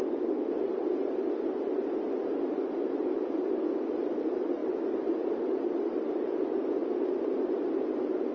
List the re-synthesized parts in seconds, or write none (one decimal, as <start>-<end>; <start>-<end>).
none